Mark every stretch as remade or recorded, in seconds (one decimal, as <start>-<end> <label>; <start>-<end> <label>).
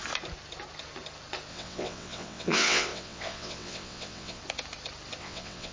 0.0-1.5 recorded; 1.5-4.4 remade; 4.4-5.2 recorded; 5.2-5.7 remade